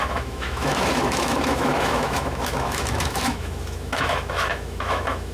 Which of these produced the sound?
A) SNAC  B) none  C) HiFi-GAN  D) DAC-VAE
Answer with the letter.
D